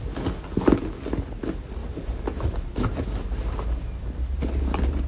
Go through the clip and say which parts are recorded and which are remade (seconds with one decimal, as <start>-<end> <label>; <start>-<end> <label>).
0.0-1.8 recorded; 1.8-5.1 remade